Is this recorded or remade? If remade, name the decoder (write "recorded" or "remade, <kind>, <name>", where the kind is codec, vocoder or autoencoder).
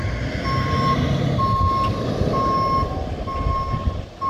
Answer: recorded